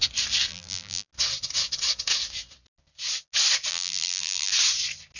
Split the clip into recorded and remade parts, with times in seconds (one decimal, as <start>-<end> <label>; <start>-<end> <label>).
0.0-0.5 recorded; 0.5-1.1 remade; 1.1-3.7 recorded; 3.7-4.5 remade; 4.5-5.2 recorded